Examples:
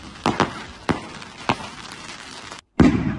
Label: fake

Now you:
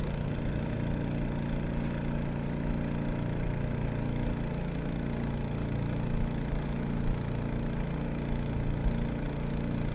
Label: real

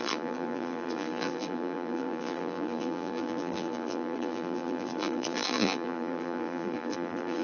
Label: fake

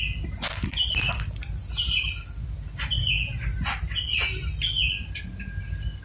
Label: real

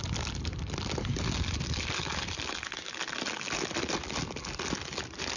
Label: real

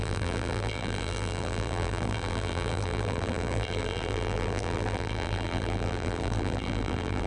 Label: fake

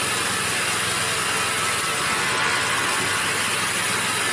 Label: real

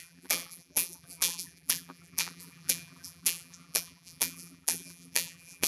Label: fake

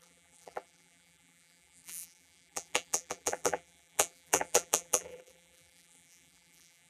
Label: fake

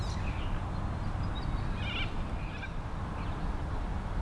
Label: real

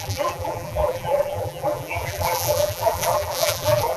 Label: fake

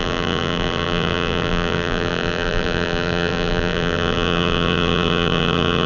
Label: fake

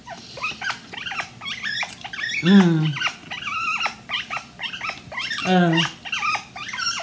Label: real